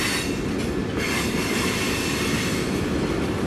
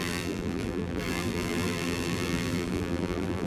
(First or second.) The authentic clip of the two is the first